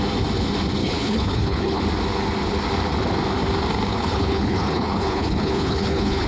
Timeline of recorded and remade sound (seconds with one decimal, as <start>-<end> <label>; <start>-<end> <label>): 0.0-0.8 recorded; 0.8-1.8 remade; 1.8-3.9 recorded; 3.9-6.3 remade